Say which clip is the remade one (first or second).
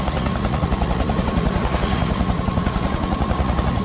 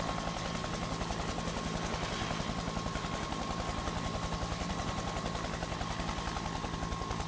first